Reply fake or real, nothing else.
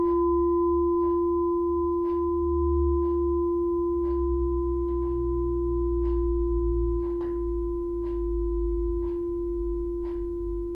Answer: real